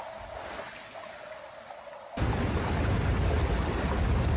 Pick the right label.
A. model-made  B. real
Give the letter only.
B